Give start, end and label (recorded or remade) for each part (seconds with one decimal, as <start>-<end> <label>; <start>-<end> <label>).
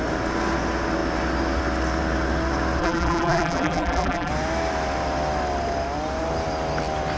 0.0-2.8 recorded; 2.8-4.3 remade; 4.3-7.2 recorded